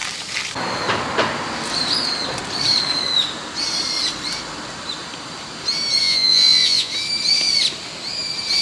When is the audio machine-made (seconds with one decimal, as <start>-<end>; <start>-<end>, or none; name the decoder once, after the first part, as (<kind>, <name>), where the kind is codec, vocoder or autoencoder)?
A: 6.0-6.9 (vocoder, Vocos)